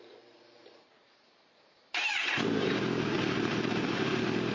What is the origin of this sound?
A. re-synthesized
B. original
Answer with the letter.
A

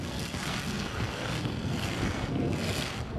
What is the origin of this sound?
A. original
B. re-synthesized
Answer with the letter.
B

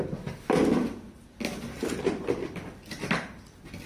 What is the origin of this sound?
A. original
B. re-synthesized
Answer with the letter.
A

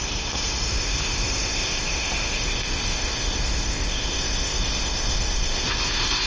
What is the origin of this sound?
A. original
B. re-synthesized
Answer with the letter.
B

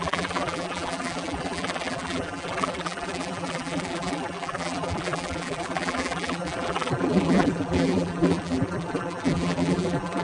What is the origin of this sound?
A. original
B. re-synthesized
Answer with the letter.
B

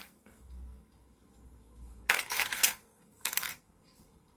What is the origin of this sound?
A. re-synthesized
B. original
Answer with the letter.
A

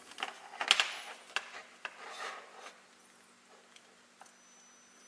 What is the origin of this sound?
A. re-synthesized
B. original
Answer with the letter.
B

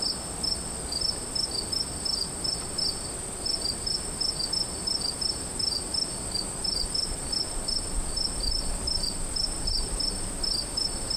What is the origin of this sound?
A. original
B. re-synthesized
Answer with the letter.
A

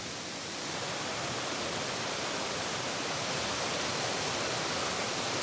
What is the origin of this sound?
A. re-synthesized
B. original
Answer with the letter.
B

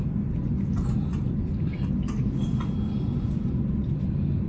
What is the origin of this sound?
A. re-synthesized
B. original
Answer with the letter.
B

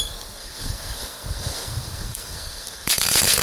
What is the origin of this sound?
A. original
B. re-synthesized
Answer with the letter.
B